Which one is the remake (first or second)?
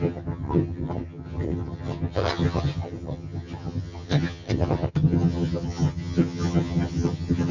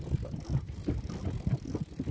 first